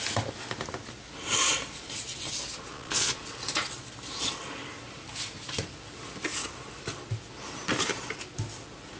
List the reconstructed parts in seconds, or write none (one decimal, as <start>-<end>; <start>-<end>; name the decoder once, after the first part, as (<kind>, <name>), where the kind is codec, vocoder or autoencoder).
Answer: 2.7-3.2 (vocoder, Vocos)